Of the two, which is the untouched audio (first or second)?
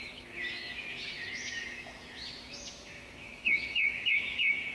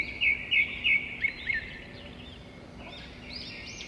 second